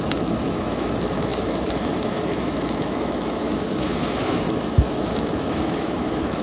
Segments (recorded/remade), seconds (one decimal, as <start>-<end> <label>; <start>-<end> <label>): 0.0-6.4 remade

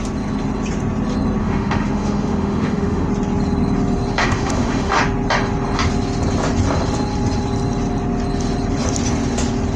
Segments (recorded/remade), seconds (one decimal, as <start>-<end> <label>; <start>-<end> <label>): 0.0-1.4 recorded; 1.4-3.1 remade; 3.1-4.2 recorded; 4.2-5.0 remade; 5.0-9.8 recorded

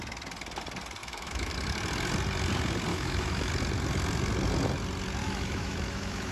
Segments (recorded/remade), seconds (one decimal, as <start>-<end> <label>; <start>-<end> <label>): 0.0-1.0 recorded; 1.0-1.5 remade; 1.5-2.9 recorded; 2.9-3.5 remade; 3.5-5.2 recorded; 5.2-6.3 remade

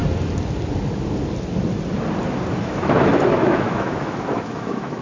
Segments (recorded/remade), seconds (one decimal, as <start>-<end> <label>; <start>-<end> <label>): 0.0-2.5 recorded; 2.5-5.0 remade

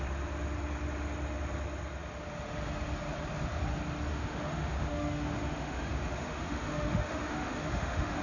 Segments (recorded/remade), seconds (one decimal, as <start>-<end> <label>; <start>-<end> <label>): 0.0-4.1 recorded; 4.1-8.2 remade

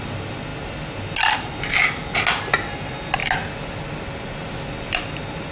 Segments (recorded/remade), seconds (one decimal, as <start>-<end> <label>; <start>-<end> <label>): 0.0-5.5 recorded

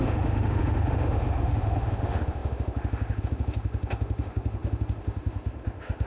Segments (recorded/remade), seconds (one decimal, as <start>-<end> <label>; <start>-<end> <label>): 0.0-6.1 remade

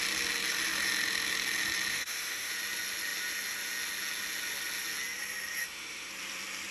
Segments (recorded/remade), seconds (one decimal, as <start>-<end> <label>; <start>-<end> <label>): 0.0-1.9 recorded; 1.9-2.5 remade; 2.5-5.6 recorded; 5.6-6.1 remade; 6.1-6.7 recorded